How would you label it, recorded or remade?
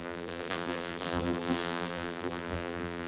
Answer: remade